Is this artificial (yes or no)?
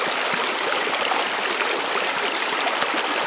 no